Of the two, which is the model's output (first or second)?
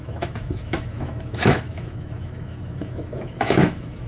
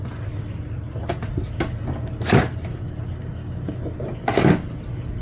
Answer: first